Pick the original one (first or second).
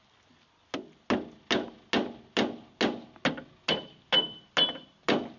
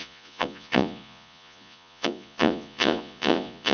first